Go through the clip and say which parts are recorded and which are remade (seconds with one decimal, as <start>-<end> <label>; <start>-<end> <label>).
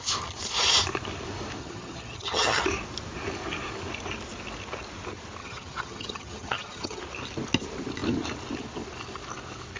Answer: 0.0-1.6 recorded; 1.6-2.6 remade; 2.6-5.4 recorded; 5.4-7.0 remade; 7.0-9.8 recorded